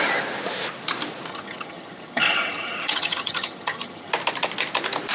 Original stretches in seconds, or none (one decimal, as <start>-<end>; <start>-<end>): 0.0-1.3; 4.1-5.1